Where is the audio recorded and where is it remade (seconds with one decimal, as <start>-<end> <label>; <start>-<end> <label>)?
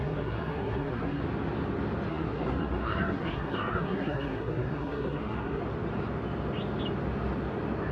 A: 0.0-1.2 remade; 1.2-2.1 recorded; 2.1-5.6 remade; 5.6-7.9 recorded